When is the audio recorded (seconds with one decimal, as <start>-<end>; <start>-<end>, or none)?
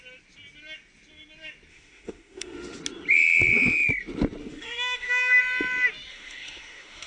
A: 0.0-1.7; 2.8-4.4; 5.4-6.1